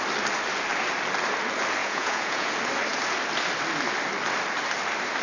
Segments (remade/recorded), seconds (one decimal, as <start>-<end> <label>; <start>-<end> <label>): 0.0-1.8 recorded; 1.8-2.5 remade; 2.5-5.2 recorded